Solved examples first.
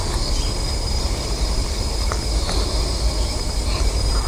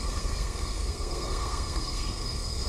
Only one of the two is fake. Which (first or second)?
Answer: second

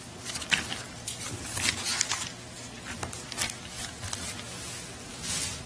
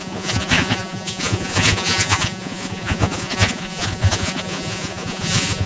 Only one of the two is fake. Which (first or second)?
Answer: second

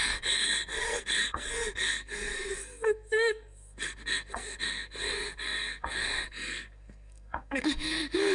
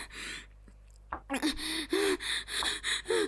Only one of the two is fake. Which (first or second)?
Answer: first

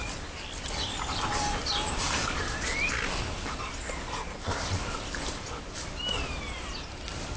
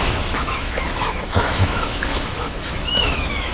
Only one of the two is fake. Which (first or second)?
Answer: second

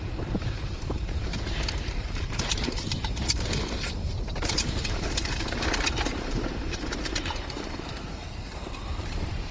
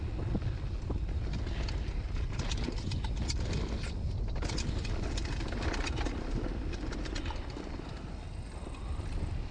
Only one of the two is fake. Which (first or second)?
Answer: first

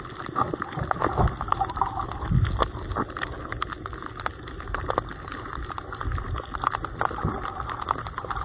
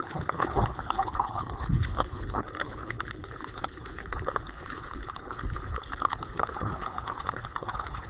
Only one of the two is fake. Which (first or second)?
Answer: second